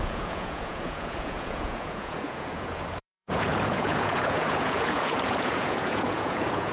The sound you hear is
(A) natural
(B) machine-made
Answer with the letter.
B